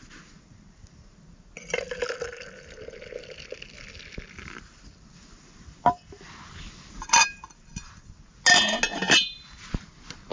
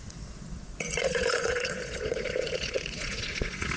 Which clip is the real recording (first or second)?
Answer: first